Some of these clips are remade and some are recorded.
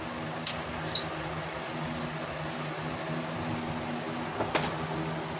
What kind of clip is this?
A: recorded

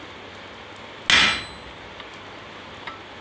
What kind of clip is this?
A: recorded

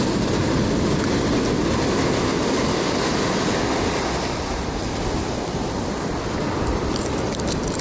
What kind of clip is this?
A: recorded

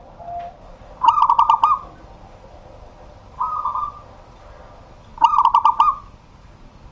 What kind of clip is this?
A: recorded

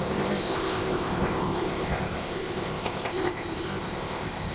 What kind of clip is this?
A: remade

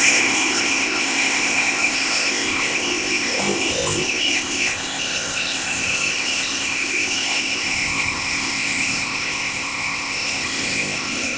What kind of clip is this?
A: remade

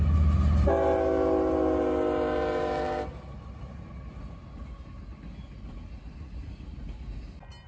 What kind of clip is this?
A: recorded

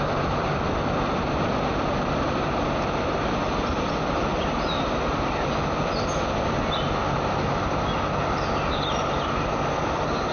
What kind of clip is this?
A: recorded